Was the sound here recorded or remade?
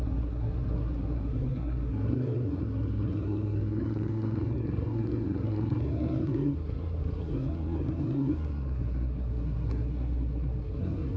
remade